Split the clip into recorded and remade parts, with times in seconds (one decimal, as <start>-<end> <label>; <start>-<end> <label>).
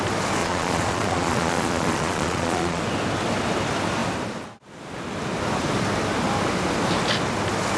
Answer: 0.0-0.4 recorded; 0.4-2.8 remade; 2.8-7.8 recorded